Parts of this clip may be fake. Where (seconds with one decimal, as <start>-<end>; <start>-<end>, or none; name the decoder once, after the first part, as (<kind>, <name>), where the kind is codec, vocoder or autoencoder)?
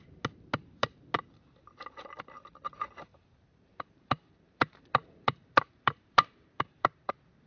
3.1-7.1 (vocoder, BigVGAN v2)